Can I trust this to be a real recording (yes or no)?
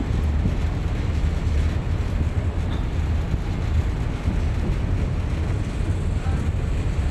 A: yes